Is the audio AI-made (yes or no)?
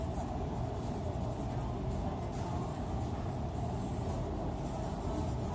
no